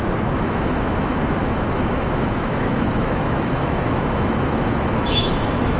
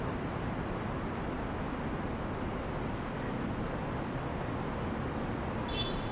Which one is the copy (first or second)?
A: first